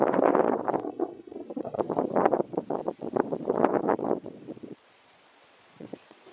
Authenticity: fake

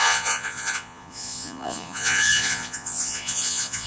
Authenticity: fake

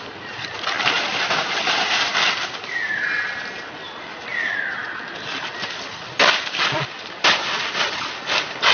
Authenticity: real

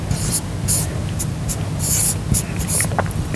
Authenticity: real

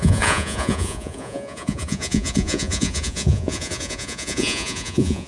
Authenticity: fake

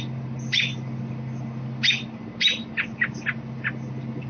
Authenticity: real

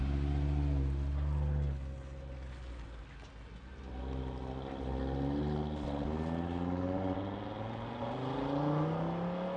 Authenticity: real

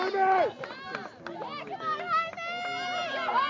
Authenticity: real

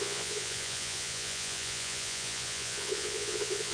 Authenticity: fake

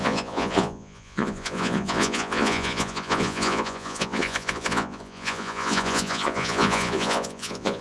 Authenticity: fake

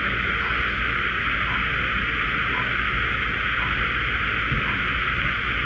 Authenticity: real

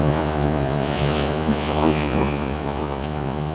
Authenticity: fake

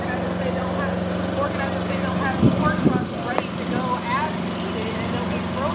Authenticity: real